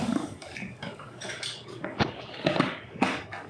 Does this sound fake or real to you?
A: fake